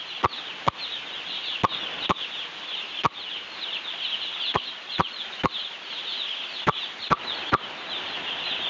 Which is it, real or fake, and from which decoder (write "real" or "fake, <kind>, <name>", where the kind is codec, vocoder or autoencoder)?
real